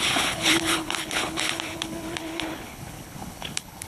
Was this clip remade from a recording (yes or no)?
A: yes